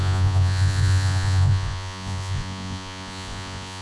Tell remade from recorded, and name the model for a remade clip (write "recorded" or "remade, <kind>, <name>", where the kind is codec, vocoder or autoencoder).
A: remade, vocoder, Vocos